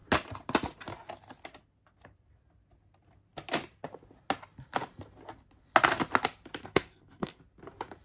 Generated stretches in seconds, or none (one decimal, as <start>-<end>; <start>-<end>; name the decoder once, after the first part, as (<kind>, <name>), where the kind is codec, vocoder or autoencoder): 6.6-7.4 (codec, SNAC)

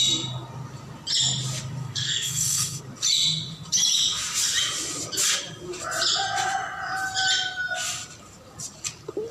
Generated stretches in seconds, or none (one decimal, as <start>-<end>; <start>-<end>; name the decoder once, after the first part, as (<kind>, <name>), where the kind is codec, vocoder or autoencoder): 1.8-2.8 (codec, SNAC)

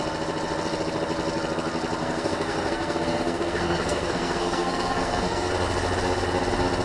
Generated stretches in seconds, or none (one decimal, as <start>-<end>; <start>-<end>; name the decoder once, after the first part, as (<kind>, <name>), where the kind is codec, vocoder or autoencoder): 2.0-5.5 (codec, SNAC)